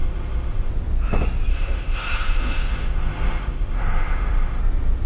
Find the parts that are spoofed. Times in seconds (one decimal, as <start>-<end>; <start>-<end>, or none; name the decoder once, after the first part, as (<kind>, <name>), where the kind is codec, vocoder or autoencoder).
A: 0.0-0.7 (autoencoder, DAC-VAE); 1.5-4.6